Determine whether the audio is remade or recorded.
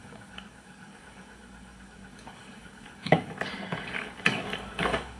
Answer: remade